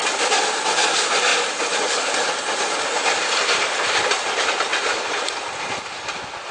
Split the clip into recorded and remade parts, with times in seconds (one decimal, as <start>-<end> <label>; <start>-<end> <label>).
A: 0.0-1.3 recorded; 1.3-2.4 remade; 2.4-4.7 recorded; 4.7-5.2 remade; 5.2-6.5 recorded